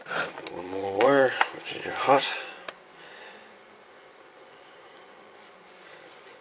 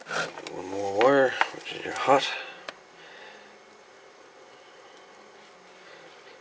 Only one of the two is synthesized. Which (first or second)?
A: first